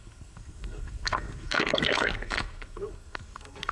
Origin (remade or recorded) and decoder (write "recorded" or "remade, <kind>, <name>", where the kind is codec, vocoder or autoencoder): remade, codec, SNAC